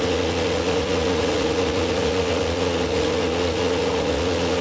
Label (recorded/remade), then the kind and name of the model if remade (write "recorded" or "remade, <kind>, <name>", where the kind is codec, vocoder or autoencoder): remade, vocoder, Vocos